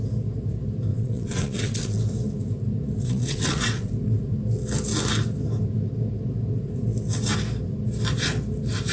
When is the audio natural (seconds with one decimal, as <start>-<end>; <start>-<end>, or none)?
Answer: 0.0-0.9; 2.0-3.0; 3.9-8.9